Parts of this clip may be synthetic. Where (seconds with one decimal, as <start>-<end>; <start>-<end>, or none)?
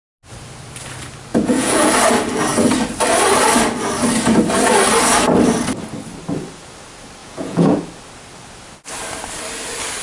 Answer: 1.3-1.9; 7.2-7.8